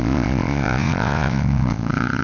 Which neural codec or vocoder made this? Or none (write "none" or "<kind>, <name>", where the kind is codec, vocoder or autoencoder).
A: vocoder, Vocos